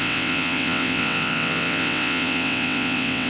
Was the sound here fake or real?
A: fake